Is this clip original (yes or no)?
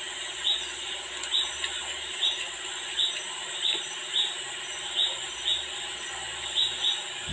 yes